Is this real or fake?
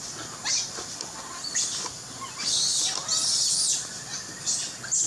real